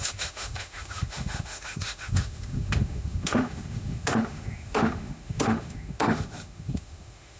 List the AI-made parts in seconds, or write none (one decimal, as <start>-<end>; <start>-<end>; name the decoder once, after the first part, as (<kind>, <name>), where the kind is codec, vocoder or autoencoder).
0.0-7.4 (autoencoder, DAC-VAE)